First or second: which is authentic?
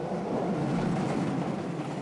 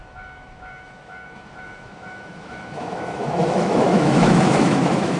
first